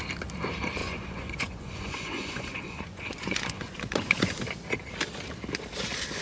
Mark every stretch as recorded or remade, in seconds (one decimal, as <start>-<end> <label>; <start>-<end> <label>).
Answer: 0.0-0.8 recorded; 0.8-4.4 remade; 4.4-6.2 recorded